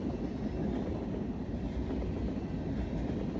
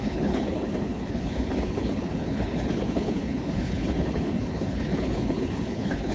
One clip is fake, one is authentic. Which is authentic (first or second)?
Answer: first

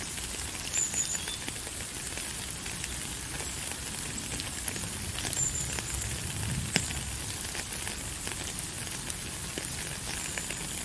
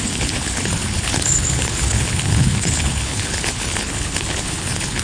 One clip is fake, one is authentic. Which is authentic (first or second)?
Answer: first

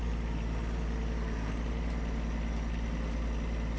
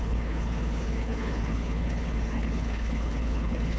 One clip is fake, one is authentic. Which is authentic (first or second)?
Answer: first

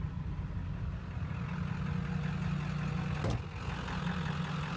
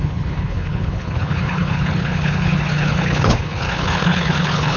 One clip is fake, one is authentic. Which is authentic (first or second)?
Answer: first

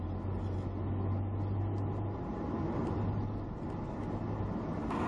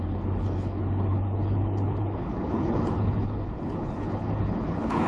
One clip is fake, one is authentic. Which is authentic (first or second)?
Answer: first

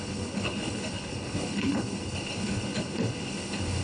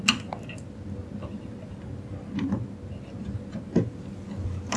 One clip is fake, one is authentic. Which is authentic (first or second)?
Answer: second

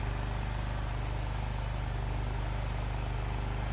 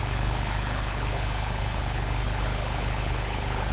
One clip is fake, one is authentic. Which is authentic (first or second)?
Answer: first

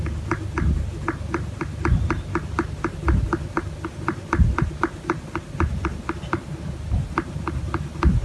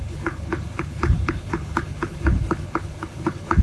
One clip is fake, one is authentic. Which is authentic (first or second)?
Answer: first